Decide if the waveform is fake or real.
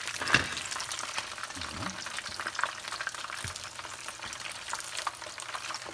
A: real